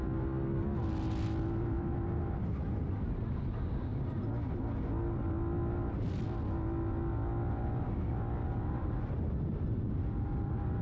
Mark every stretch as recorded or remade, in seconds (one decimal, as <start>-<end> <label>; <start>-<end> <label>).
0.0-3.9 recorded; 3.9-4.7 remade; 4.7-10.8 recorded